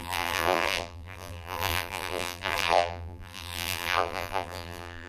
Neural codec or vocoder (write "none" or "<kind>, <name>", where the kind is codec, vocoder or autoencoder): vocoder, BigVGAN v2